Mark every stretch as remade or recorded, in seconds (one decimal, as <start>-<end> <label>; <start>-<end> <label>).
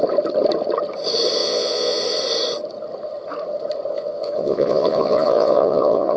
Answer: 0.0-1.4 recorded; 1.4-2.0 remade; 2.0-3.9 recorded; 3.9-6.2 remade